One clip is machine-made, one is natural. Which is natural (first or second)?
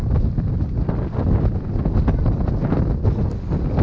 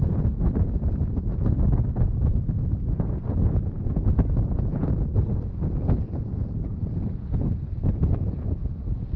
first